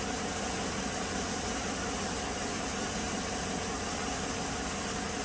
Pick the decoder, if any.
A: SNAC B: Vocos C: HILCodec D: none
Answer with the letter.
D